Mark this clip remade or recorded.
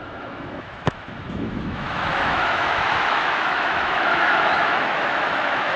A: remade